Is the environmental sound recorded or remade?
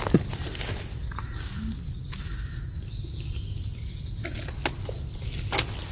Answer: recorded